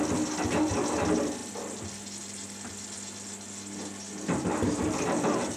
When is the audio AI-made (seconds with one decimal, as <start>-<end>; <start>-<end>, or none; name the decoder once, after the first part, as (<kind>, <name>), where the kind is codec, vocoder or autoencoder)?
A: none